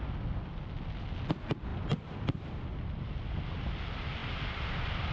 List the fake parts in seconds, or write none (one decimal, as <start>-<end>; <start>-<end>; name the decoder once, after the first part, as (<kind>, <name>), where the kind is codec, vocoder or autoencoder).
1.7-2.7 (vocoder, BigVGAN v2); 4.2-5.1

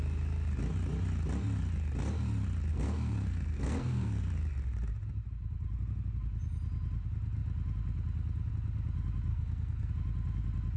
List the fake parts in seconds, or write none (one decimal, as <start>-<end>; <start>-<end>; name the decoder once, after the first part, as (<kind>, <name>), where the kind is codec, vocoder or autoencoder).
2.7-4.2 (codec, SNAC); 9.3-9.9